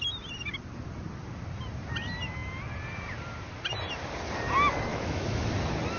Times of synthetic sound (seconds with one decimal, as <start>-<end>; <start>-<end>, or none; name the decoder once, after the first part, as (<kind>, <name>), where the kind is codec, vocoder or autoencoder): 4.9-5.5 (autoencoder, DAC-VAE)